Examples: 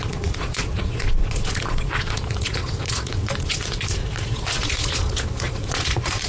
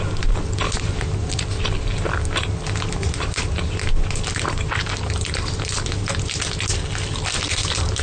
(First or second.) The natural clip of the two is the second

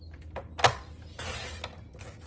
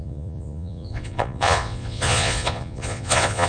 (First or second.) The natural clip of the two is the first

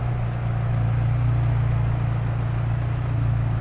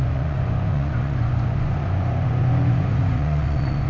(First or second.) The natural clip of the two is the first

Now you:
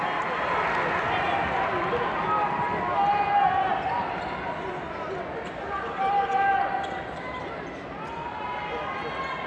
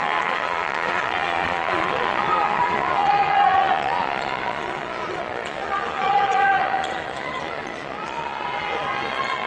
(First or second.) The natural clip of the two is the first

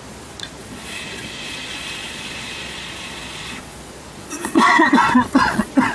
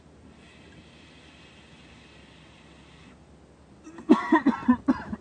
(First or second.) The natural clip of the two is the second